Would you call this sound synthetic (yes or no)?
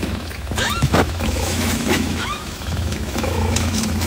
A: yes